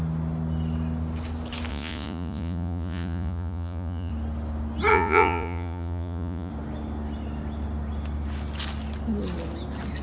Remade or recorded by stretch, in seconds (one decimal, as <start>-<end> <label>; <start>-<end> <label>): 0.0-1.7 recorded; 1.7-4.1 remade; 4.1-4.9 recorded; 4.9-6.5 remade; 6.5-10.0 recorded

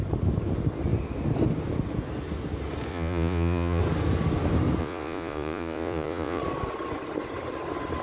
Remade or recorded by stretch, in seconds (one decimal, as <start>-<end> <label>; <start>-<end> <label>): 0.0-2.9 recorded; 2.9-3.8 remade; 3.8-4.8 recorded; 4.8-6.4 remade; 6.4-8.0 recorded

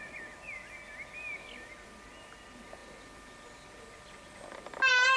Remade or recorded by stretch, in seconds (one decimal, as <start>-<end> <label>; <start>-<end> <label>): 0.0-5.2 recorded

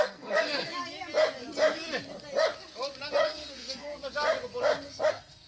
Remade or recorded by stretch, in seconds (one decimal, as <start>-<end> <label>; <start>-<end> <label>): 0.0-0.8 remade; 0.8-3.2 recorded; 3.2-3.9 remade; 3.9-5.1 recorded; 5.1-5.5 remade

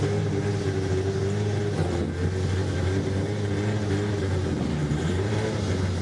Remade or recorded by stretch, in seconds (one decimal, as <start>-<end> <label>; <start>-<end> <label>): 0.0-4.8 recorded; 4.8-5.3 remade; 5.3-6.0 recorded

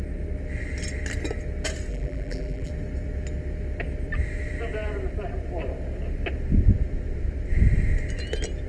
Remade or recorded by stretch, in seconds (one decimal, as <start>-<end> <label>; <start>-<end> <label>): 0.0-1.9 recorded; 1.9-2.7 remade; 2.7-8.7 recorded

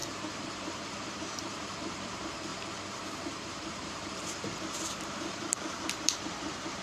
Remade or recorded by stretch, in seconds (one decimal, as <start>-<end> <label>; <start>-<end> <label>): 0.0-2.5 remade; 2.5-3.2 recorded; 3.2-6.8 remade

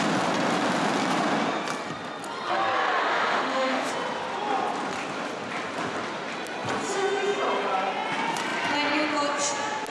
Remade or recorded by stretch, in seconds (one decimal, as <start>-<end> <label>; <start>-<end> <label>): 0.0-3.1 recorded; 3.1-3.9 remade; 3.9-9.9 recorded